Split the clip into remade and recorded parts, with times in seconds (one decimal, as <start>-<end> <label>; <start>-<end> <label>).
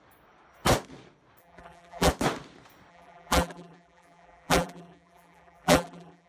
0.0-1.4 recorded; 1.4-2.1 remade; 2.1-2.9 recorded; 2.9-6.3 remade